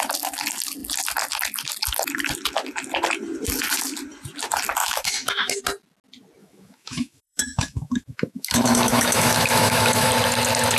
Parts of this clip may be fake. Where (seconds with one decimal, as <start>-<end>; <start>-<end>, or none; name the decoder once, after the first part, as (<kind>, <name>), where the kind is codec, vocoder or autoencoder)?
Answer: 4.8-5.6 (autoencoder, DAC-VAE); 6.4-10.1